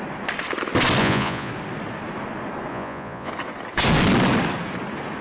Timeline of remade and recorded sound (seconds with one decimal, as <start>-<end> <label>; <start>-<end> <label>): 0.0-1.0 recorded; 1.0-1.5 remade; 1.5-2.7 recorded; 2.7-3.3 remade; 3.3-5.2 recorded